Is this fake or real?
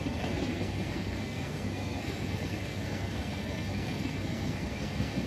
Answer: fake